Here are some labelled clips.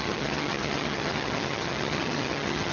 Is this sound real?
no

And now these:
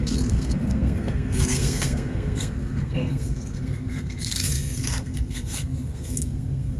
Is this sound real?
no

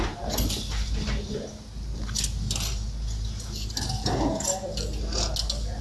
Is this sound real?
yes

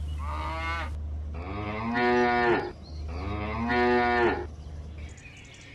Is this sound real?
yes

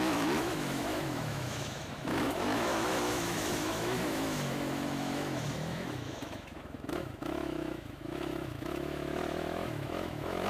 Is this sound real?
no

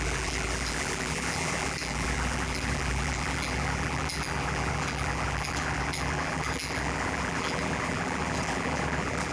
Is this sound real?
no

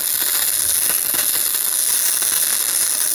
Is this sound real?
yes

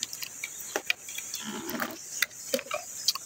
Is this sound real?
yes